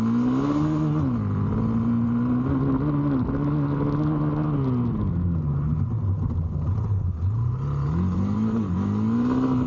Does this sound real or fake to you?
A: real